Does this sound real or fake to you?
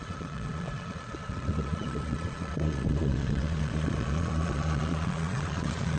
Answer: fake